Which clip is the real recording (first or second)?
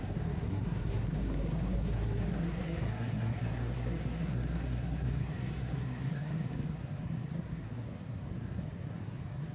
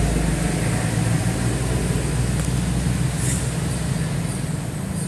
second